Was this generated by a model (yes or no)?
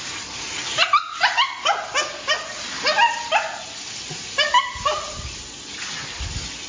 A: no